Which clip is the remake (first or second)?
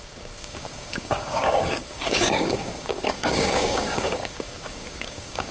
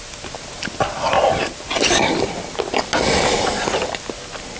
first